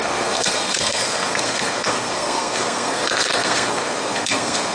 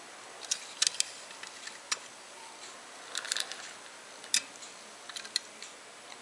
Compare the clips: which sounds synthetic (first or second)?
first